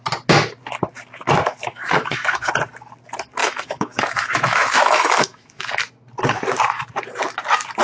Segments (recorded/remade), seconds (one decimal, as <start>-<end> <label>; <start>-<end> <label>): 0.0-1.6 recorded; 1.6-2.5 remade; 2.5-3.4 recorded; 3.4-5.6 remade; 5.6-7.8 recorded